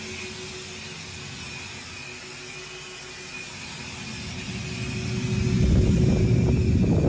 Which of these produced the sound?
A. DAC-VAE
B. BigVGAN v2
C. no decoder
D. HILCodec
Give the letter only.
C